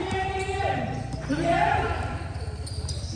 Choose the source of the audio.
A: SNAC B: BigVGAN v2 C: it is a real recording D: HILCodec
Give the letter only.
B